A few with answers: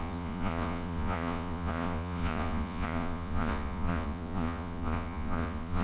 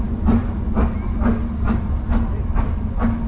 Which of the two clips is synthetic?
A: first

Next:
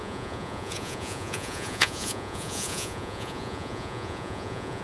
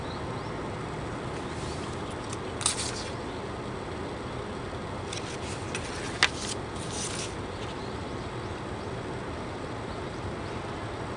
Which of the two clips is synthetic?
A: first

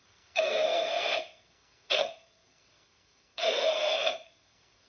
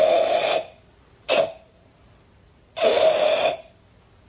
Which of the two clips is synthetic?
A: first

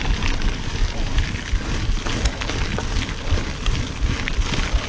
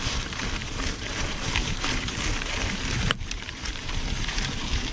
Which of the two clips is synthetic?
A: second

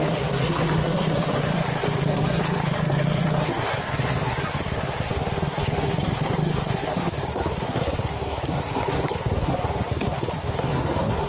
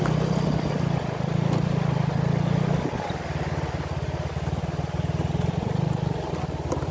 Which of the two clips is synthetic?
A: first